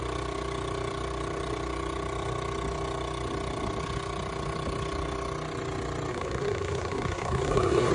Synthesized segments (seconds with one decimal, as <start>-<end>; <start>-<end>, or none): 6.1-7.9